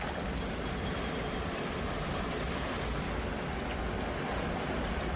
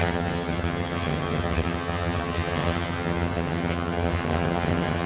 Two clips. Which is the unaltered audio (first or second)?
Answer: first